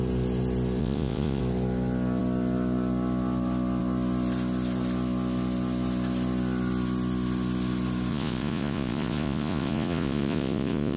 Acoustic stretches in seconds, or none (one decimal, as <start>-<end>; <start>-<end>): 0.0-0.8; 1.4-8.1